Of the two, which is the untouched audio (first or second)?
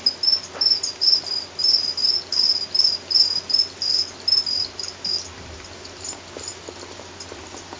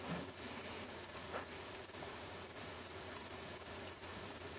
first